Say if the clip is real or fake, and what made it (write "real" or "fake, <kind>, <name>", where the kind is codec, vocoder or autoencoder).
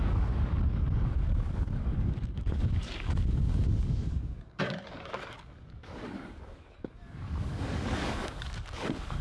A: fake, codec, DAC